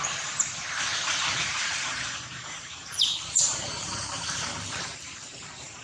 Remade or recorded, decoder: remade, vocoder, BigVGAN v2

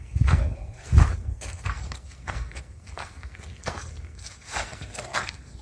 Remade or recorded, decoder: remade, codec, SNAC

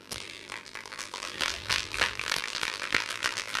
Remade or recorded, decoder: remade, vocoder, BigVGAN v2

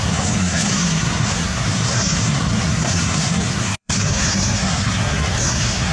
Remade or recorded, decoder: remade, codec, SNAC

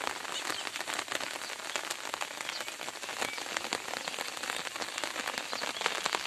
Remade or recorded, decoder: recorded